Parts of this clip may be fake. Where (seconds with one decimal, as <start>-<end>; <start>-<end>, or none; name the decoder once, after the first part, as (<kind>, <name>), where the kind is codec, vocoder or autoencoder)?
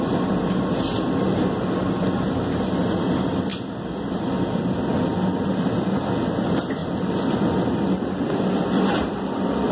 none